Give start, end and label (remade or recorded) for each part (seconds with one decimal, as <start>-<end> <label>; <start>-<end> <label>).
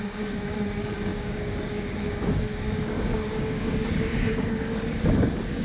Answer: 0.0-5.6 remade